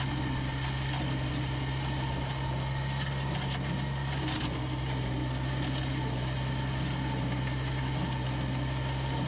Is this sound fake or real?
real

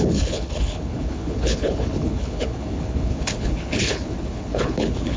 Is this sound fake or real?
fake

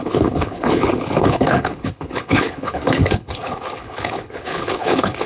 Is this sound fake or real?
fake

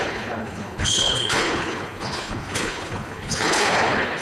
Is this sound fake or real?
fake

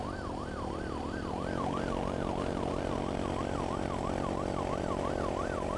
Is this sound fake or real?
real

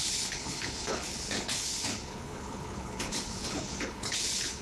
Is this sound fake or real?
fake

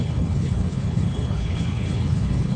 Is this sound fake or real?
fake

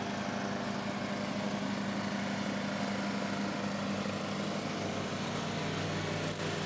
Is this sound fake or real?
real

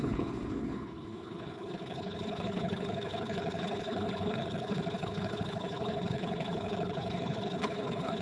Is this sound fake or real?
fake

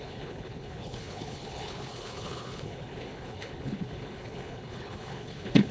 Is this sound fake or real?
fake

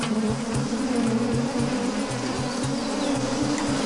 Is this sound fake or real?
real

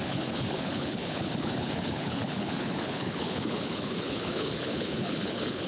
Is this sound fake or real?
fake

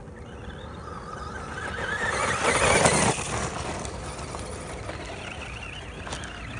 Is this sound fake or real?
real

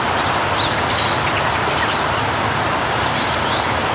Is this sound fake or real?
real